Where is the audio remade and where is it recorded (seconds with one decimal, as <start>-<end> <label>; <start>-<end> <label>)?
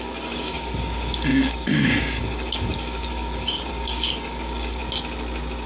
0.0-4.8 remade; 4.8-5.7 recorded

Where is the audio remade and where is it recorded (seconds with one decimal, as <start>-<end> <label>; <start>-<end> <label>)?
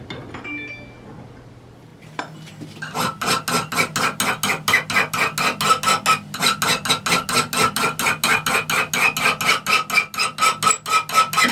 0.0-11.5 recorded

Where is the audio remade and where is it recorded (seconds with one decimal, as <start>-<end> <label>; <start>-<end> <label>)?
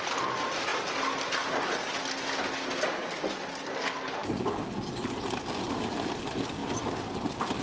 0.0-7.6 recorded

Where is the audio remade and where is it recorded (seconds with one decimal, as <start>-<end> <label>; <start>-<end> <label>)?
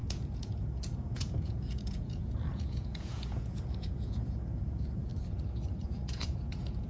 0.0-5.1 remade; 5.1-5.8 recorded; 5.8-6.9 remade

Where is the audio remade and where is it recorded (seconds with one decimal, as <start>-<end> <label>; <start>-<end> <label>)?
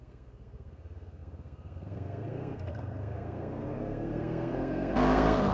0.0-5.5 remade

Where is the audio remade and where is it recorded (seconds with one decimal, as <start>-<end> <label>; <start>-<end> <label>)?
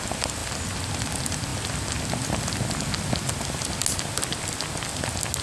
0.0-5.4 recorded